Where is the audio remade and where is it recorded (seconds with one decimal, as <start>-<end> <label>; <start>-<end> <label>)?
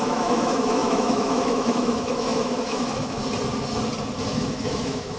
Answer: 0.0-3.2 remade; 3.2-4.3 recorded; 4.3-5.2 remade